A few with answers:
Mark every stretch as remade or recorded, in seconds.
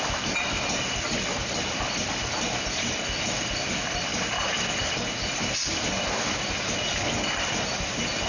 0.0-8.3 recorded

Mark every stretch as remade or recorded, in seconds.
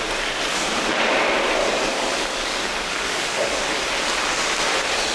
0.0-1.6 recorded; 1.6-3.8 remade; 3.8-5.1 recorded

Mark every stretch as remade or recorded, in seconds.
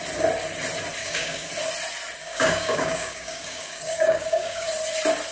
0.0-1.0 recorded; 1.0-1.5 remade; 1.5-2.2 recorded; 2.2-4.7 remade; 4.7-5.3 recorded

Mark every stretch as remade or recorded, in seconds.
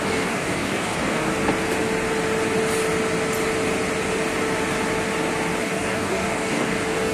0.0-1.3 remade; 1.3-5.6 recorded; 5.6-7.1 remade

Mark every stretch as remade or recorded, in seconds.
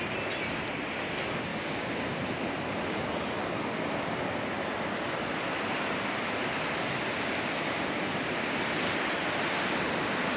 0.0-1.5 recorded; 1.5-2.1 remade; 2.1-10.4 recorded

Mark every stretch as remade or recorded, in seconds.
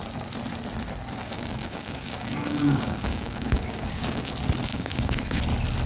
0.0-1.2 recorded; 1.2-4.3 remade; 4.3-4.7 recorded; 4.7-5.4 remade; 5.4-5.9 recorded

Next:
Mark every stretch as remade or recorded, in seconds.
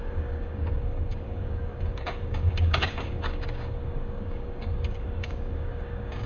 0.0-6.3 remade